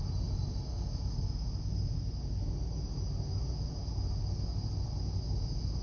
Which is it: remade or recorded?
recorded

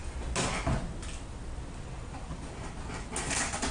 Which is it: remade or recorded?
recorded